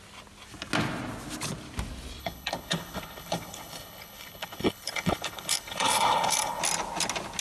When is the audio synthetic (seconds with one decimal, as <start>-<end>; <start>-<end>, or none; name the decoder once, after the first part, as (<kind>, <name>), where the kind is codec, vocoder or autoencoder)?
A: 2.2-6.6 (codec, HILCodec)